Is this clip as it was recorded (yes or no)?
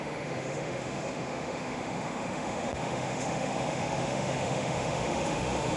no